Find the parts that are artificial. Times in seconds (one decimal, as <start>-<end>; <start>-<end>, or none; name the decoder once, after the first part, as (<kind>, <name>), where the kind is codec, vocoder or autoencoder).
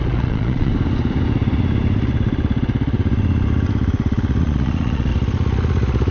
0.0-0.7 (vocoder, Vocos); 4.4-5.1